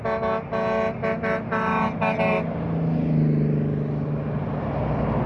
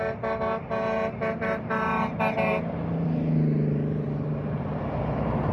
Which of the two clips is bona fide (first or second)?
first